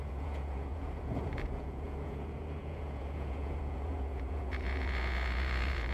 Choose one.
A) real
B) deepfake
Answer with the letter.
B